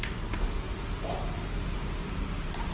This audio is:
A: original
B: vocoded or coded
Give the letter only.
A